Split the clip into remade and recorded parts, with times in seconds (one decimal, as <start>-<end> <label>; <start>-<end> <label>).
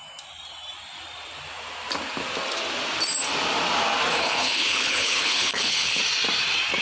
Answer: 0.0-4.1 recorded; 4.1-6.0 remade; 6.0-6.8 recorded